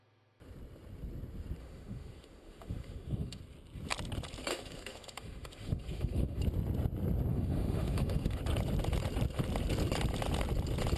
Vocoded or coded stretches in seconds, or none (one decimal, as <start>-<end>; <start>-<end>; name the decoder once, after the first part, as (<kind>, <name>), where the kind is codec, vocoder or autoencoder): 1.6-3.4 (autoencoder, DAC-VAE); 4.5-6.4; 7.3-8.4